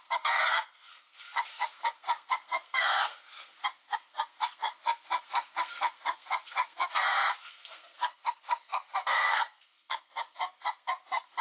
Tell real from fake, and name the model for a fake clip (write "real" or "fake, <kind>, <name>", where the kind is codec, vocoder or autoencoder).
fake, codec, SNAC